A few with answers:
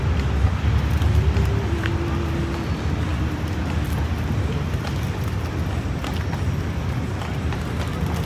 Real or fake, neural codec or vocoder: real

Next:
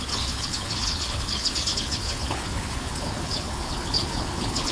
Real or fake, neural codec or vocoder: fake, codec, HILCodec